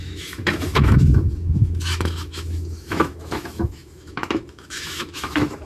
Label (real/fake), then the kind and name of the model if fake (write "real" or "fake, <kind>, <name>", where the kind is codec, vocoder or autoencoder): fake, autoencoder, DAC-VAE